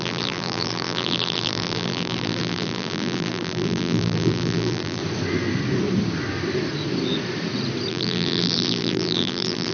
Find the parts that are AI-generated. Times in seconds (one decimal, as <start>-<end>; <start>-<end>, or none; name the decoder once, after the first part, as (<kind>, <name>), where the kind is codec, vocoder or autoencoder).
0.0-5.0 (vocoder, BigVGAN v2); 7.9-9.7